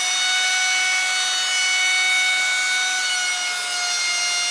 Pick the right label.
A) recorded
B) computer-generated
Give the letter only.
A